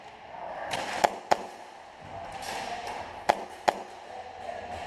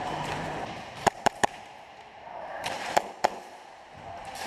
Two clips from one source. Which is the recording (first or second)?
first